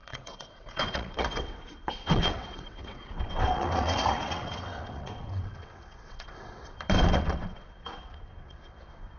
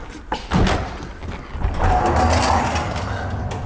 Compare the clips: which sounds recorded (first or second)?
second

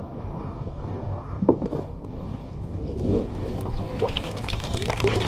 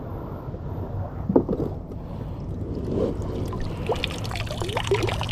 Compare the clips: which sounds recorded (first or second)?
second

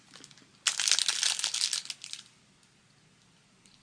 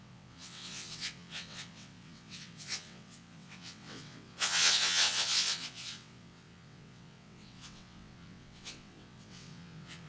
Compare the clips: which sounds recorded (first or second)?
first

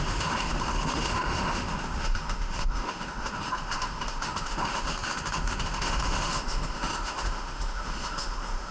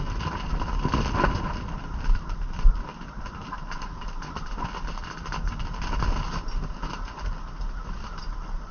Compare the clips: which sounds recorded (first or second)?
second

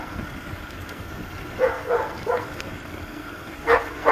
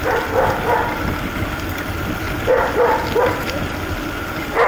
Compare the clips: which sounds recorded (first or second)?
second